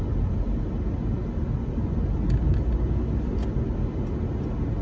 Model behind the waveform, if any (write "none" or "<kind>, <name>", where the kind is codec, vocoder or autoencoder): none